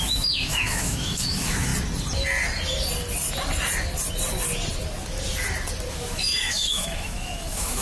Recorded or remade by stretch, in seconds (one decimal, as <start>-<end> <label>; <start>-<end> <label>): 0.0-1.7 remade; 1.7-5.9 recorded; 5.9-7.8 remade